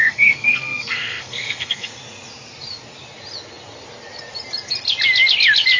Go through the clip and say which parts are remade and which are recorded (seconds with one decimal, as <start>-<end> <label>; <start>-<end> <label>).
0.0-1.9 remade; 1.9-5.8 recorded